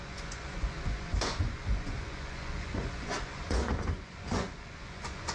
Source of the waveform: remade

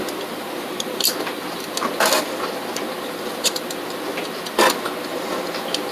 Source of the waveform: recorded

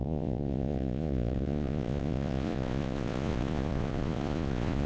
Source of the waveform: remade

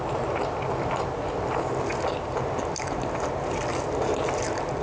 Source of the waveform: recorded